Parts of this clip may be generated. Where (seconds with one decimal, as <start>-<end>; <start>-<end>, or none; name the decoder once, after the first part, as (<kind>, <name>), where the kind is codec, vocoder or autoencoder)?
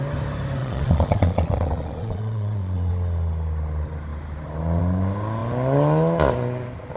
0.6-2.9 (vocoder, Vocos)